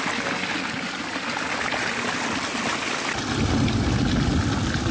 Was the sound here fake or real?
real